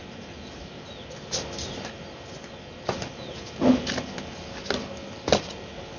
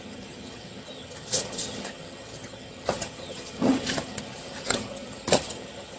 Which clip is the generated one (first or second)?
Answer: second